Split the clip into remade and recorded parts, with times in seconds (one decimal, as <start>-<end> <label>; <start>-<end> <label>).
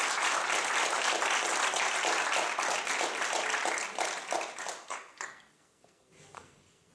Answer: 0.0-4.8 recorded; 4.8-6.9 remade